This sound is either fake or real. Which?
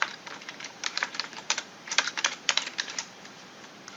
fake